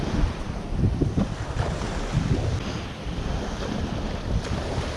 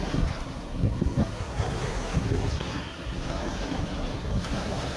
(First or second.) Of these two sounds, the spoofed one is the second